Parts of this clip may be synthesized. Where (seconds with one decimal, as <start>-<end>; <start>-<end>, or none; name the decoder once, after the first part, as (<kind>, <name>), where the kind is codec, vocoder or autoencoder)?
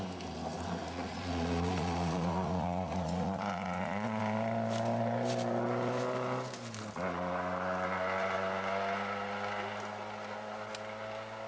0.8-4.2 (vocoder, Vocos)